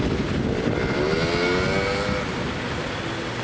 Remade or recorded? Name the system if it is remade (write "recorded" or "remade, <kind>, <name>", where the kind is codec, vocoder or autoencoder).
recorded